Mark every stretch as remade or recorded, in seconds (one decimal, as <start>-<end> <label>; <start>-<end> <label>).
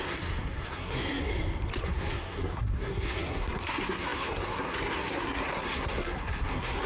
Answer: 0.0-1.3 remade; 1.3-1.8 recorded; 1.8-6.9 remade